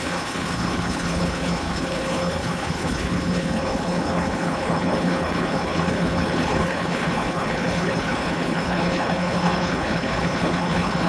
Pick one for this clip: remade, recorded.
remade